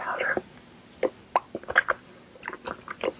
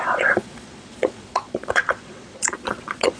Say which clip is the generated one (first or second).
second